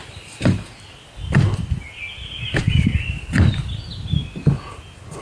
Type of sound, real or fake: real